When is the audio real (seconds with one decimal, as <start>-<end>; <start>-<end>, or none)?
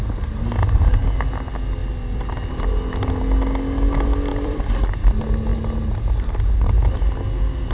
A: 0.0-4.3; 4.9-7.7